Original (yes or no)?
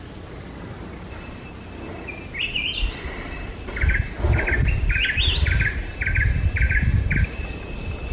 yes